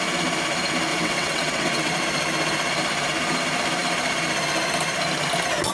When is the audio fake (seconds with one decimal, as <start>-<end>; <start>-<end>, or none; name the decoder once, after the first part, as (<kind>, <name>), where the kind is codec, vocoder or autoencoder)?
0.9-1.9 (vocoder, WaveNeXt)